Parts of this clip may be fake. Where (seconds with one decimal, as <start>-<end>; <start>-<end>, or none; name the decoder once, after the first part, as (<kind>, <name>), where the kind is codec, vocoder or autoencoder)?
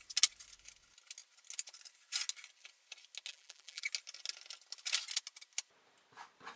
3.3-3.8 (vocoder, BigVGAN v2)